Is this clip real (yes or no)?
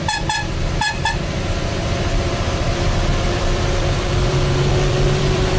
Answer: no